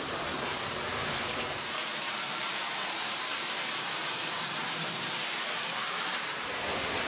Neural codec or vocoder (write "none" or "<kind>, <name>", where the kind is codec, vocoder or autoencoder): vocoder, BigVGAN v2